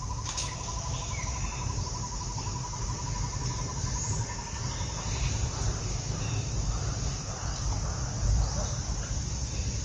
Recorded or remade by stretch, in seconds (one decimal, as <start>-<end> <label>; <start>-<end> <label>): 0.0-9.8 recorded